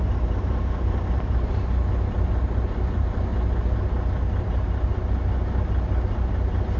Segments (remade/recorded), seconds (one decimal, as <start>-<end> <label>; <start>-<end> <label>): 0.0-1.8 remade; 1.8-2.8 recorded; 2.8-3.3 remade; 3.3-4.4 recorded; 4.4-4.9 remade; 4.9-6.8 recorded

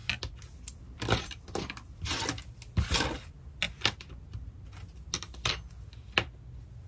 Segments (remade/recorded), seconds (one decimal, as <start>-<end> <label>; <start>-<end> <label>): 0.0-6.9 recorded

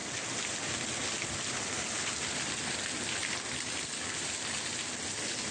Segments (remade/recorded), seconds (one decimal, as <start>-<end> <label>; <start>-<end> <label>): 0.0-5.5 recorded

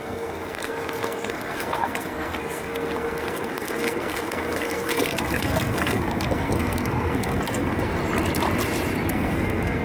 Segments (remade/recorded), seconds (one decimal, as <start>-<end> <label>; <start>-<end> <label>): 0.0-8.0 remade; 8.0-9.1 recorded; 9.1-9.8 remade